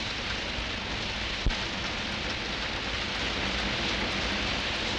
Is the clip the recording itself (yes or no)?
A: yes